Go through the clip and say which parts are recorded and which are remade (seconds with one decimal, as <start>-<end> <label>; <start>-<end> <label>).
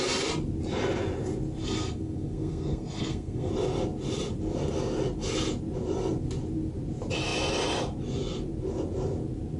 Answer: 0.0-1.6 recorded; 1.6-3.5 remade; 3.5-9.6 recorded